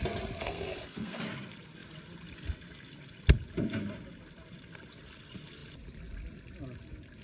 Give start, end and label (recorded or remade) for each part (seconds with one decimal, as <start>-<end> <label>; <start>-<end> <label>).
0.0-0.4 recorded; 0.4-1.2 remade; 1.2-7.2 recorded